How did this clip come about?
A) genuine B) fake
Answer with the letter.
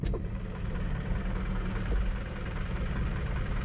B